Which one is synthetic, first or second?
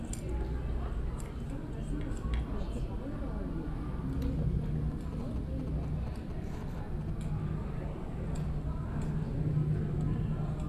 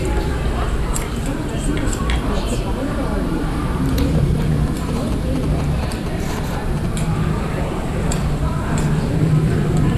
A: second